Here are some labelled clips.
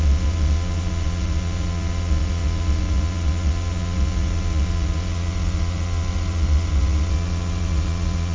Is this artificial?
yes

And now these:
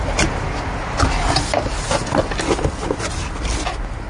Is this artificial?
no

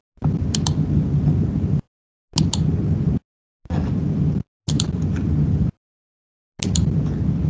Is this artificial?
no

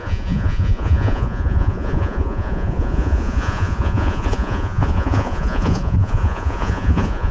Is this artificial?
yes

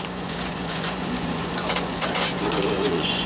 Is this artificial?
yes